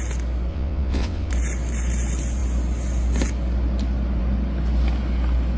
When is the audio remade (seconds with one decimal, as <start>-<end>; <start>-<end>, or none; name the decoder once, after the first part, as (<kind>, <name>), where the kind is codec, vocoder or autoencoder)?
0.5-1.3 (vocoder, WaveNeXt)